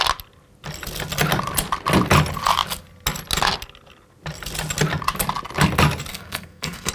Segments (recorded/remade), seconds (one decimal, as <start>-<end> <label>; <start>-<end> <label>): 0.0-6.1 recorded; 6.1-6.9 remade